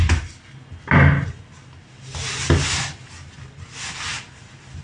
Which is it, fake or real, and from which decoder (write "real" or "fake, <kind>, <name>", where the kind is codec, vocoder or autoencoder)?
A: real